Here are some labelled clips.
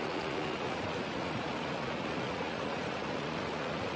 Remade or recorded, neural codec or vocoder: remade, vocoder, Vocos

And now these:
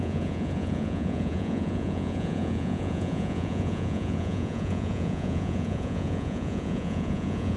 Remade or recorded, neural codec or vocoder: remade, vocoder, Vocos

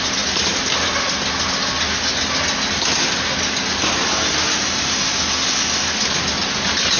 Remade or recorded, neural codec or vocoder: recorded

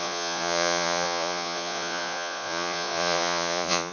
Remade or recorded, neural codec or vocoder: remade, vocoder, Vocos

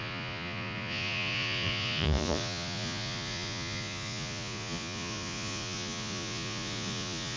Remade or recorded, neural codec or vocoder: remade, vocoder, Vocos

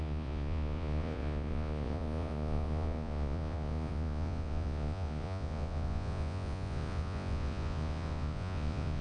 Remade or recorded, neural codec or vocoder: remade, vocoder, Vocos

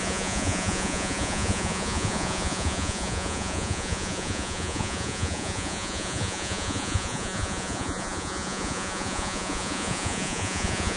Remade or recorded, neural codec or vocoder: remade, vocoder, Vocos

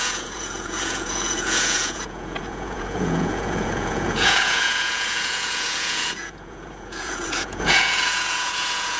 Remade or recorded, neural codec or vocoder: remade, vocoder, Vocos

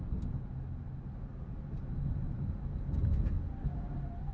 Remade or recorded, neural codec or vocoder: recorded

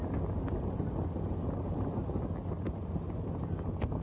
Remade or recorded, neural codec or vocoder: recorded